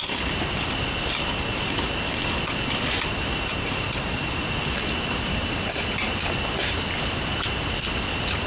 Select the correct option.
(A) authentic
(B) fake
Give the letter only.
A